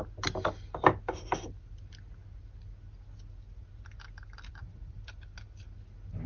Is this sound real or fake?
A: real